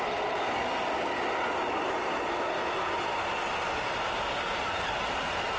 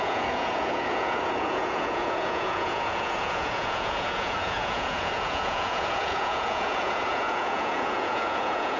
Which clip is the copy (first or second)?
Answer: second